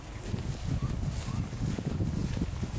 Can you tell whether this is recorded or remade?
remade